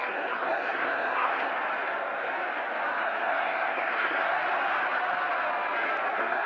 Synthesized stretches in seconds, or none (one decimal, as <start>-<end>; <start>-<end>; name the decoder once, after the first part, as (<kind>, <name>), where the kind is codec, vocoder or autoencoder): 0.0-1.5 (codec, SNAC); 3.0-4.3; 6.1-6.5